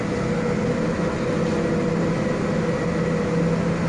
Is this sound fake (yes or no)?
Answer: no